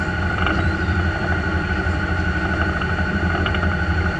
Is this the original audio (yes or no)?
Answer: no